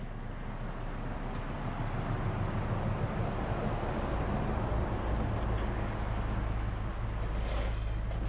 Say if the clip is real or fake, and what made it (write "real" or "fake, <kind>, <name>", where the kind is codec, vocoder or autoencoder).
real